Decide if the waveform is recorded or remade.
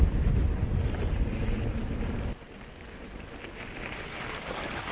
recorded